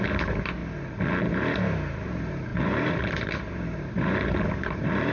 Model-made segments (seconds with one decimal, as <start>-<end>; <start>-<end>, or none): 0.0-0.6; 1.2-5.1